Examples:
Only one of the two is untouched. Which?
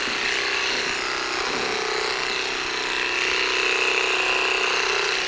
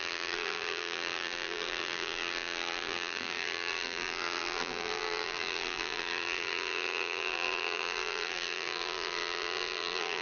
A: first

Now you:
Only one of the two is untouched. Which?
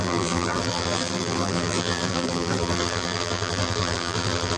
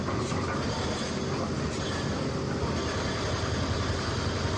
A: second